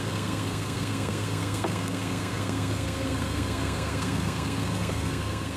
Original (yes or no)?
no